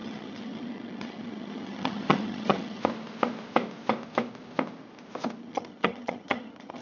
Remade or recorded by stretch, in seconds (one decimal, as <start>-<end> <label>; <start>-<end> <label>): 0.0-2.8 remade; 2.8-5.4 recorded; 5.4-6.8 remade